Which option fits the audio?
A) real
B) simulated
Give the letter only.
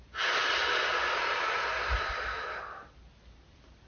A